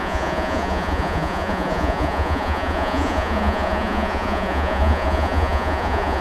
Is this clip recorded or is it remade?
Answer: remade